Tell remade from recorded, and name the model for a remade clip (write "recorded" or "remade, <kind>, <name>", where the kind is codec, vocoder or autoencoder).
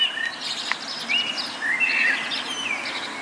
recorded